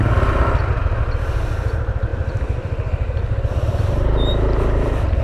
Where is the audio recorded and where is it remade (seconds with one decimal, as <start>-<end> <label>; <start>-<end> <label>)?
0.0-2.1 recorded; 2.1-5.2 remade